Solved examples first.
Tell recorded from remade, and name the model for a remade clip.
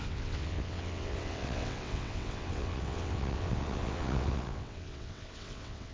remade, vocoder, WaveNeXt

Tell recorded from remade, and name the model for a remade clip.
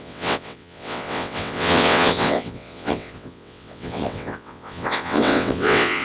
remade, vocoder, WaveNeXt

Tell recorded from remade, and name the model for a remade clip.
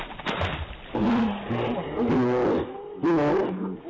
recorded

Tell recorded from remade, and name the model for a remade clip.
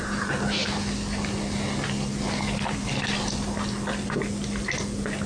recorded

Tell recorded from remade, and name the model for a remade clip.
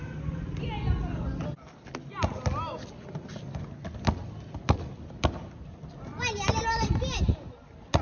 recorded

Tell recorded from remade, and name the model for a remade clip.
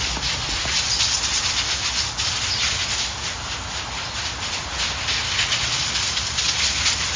recorded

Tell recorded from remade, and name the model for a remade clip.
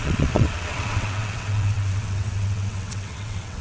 remade, vocoder, WaveNeXt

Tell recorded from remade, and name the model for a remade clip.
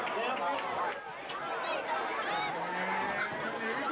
recorded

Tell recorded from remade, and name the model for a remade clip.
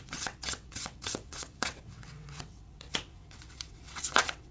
remade, vocoder, WaveNeXt